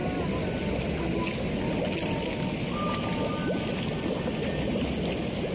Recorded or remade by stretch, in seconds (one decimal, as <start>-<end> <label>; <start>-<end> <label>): 0.0-5.5 recorded